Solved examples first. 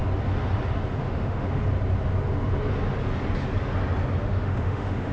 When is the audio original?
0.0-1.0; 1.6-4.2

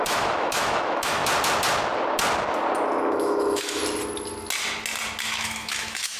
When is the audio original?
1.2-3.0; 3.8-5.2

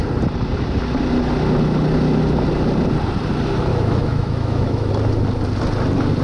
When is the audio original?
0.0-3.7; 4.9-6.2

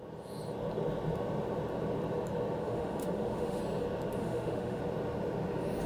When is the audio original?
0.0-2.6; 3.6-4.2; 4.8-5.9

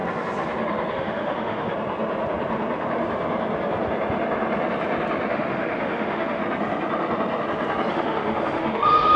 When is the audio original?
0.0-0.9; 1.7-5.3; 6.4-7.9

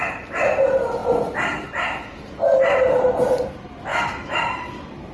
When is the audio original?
0.0-3.9; 4.4-5.1